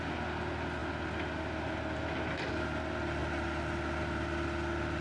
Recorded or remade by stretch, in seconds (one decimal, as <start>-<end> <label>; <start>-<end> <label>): 0.0-5.0 recorded